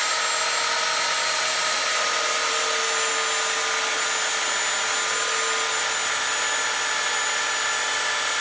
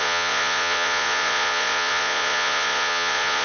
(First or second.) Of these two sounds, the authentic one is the first